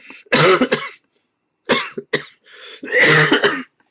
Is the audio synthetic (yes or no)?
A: no